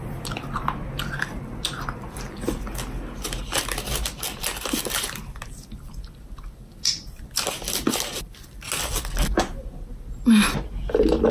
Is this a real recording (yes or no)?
yes